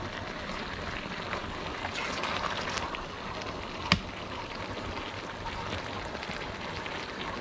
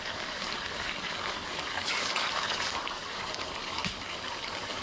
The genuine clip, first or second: first